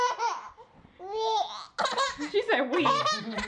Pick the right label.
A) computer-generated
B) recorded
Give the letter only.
B